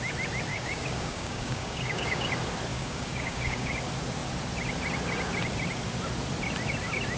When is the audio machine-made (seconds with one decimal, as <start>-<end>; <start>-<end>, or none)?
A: 0.5-2.3; 2.7-3.8